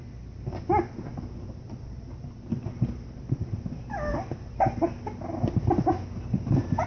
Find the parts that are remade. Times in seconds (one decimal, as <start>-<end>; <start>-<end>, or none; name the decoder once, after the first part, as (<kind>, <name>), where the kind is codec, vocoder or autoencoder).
none